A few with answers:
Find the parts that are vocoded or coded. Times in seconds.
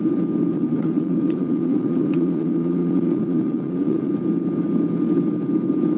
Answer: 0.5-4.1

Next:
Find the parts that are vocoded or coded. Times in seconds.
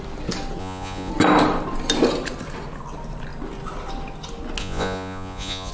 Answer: 0.6-1.1; 4.6-5.7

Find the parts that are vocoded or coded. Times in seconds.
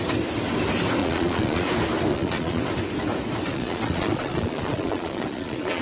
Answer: 1.0-1.7; 2.1-2.6; 3.5-5.8